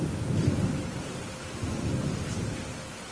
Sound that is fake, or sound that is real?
real